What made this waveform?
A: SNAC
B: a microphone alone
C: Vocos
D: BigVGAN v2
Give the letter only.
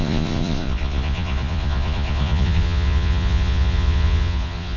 C